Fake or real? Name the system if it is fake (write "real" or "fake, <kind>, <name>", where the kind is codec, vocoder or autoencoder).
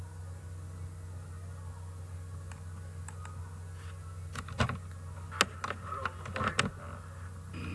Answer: real